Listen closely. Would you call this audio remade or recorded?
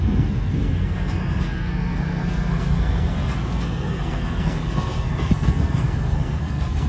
remade